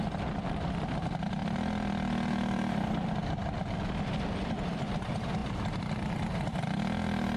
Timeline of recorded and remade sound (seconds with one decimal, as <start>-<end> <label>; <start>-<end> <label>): 0.0-7.4 recorded

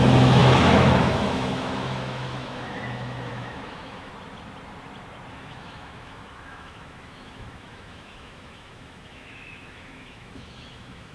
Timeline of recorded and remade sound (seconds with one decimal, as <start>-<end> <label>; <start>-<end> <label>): 0.0-4.1 remade; 4.1-5.3 recorded; 5.3-11.1 remade

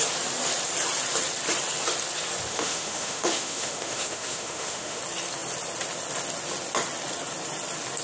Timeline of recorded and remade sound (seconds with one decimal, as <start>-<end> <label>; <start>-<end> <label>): 0.0-2.5 recorded; 2.5-5.0 remade; 5.0-8.0 recorded

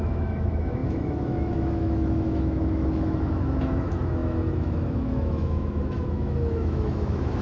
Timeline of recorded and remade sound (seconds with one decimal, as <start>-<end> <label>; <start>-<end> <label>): 0.0-7.4 remade

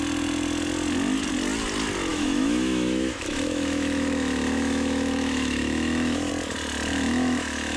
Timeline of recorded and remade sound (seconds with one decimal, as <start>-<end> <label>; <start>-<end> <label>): 0.0-2.1 recorded; 2.1-6.3 remade; 6.3-6.9 recorded; 6.9-7.8 remade

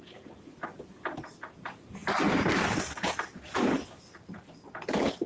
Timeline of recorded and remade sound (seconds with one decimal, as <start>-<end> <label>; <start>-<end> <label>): 0.0-5.3 recorded

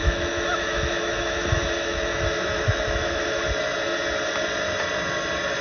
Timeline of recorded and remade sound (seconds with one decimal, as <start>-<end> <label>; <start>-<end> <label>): 0.0-3.4 remade; 3.4-5.6 recorded